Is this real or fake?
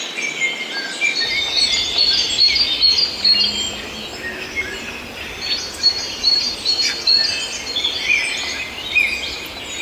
real